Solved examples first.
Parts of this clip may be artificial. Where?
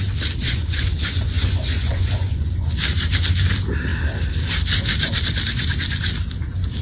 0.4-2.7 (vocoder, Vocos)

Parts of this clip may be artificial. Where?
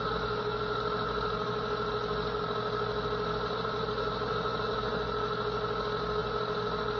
none